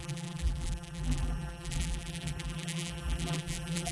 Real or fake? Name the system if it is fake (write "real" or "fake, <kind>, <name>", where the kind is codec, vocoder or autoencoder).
fake, vocoder, BigVGAN v2